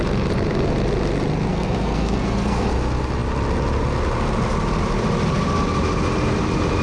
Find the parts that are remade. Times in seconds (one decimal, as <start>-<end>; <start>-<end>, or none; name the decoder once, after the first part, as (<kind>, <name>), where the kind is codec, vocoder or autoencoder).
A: 1.5-2.7 (codec, SNAC)